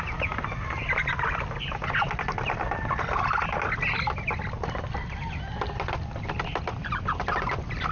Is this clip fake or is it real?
real